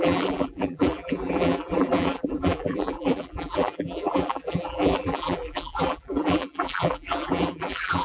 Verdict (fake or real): fake